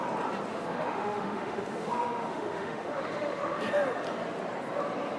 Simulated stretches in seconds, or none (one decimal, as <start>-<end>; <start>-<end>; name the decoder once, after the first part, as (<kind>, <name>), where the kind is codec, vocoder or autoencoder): 0.5-3.6 (autoencoder, DAC-VAE)